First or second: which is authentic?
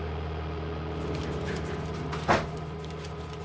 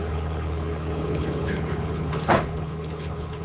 first